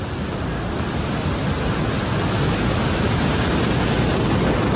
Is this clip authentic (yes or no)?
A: yes